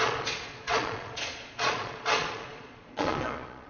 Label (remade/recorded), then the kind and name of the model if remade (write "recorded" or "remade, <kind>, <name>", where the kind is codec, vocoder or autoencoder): remade, vocoder, Vocos